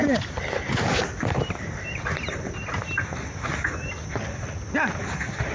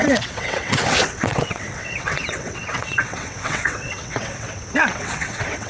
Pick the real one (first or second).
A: first